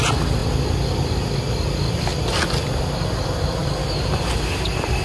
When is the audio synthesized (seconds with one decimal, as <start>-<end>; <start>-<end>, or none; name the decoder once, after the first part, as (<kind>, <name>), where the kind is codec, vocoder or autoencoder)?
none